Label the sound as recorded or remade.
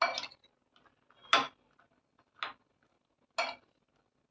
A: recorded